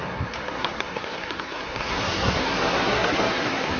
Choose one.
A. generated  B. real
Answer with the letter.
A